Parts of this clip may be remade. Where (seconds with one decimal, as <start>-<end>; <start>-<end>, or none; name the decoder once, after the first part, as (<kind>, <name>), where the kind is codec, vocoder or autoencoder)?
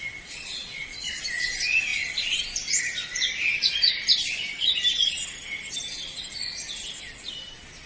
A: 0.5-1.2 (vocoder, Vocos)